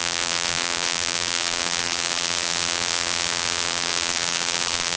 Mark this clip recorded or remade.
remade